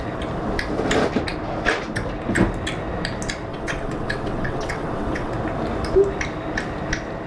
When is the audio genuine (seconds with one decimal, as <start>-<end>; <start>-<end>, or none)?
0.0-3.5; 5.3-7.3

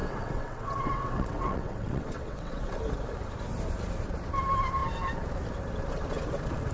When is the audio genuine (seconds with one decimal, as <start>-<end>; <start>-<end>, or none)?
2.8-6.7

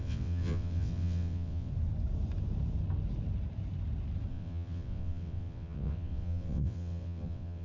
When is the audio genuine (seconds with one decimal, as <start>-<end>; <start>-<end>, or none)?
1.7-4.3

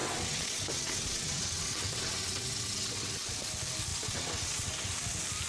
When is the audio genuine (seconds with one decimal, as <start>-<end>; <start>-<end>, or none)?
3.3-3.9; 4.9-5.5

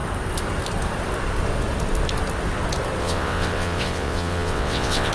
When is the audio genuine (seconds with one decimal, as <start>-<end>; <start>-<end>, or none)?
0.0-3.0

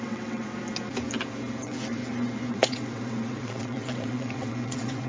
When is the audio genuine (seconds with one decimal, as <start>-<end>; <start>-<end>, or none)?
0.5-1.6; 2.0-2.5

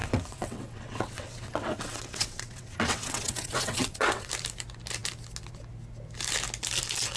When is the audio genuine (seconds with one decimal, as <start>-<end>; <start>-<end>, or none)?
4.3-7.2